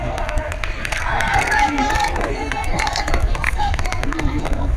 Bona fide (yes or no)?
no